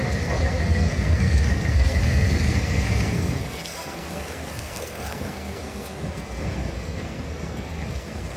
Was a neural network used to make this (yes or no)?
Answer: yes